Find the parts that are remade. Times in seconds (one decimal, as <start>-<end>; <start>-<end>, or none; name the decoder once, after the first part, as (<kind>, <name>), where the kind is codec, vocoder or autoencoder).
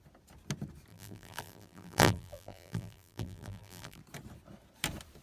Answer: 0.9-4.0 (vocoder, BigVGAN v2)